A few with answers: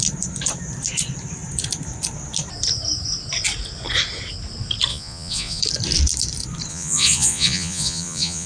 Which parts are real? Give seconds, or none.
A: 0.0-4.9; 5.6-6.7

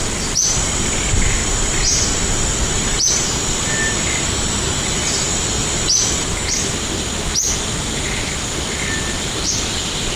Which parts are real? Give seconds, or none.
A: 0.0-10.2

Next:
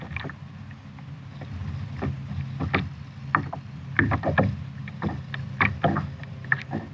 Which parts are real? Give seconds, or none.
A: 0.0-6.9